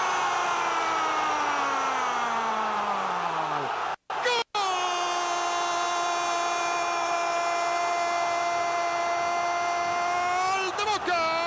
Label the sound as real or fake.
real